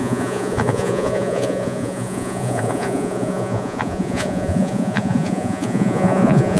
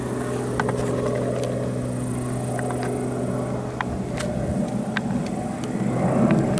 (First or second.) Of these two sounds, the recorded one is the second